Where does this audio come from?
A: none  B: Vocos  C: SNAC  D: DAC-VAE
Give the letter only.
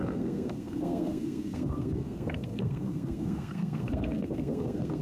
C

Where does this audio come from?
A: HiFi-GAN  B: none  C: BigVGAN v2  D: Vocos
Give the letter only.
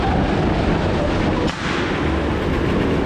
B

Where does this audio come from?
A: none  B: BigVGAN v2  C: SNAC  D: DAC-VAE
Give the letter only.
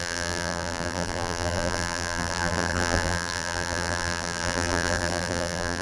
B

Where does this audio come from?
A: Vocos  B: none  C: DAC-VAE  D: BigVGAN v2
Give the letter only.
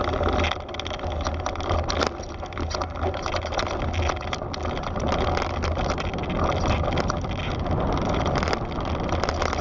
B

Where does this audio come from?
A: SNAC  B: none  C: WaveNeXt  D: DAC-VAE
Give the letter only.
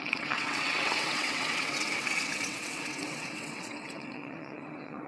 C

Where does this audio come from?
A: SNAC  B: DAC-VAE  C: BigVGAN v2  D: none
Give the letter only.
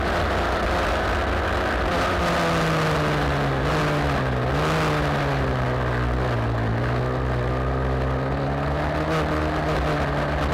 D